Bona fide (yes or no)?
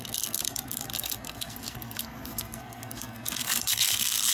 no